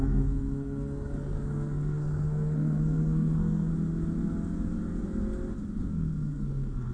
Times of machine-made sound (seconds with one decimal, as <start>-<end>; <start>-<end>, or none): 0.0-3.7; 5.9-6.9